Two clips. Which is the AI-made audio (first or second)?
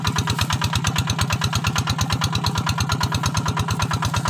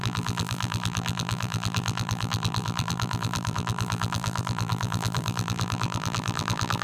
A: second